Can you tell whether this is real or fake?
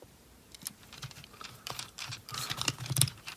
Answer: fake